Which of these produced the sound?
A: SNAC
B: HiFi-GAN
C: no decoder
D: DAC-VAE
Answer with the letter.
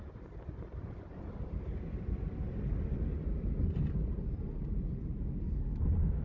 C